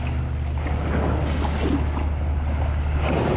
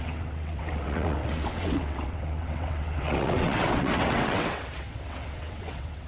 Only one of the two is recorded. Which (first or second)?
first